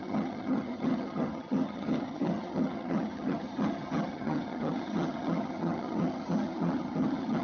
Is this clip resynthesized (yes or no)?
yes